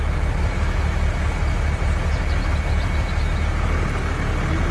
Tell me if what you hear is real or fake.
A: real